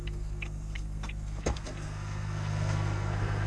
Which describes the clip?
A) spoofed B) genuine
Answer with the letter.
A